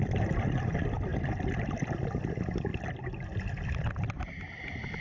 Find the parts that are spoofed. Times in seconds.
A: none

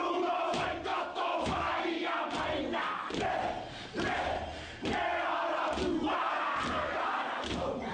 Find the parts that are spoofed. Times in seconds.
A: 0.9-1.8

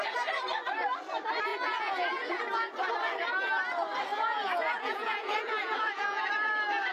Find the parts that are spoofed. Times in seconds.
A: 1.5-2.4; 4.1-6.3

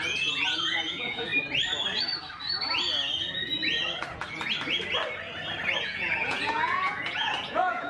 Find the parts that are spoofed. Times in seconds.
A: 0.0-1.3; 5.8-7.9

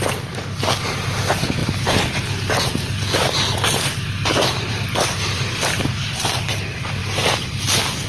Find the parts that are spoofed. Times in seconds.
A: 1.6-6.5; 7.0-7.6